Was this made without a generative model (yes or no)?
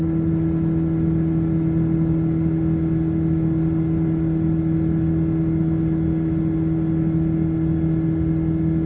yes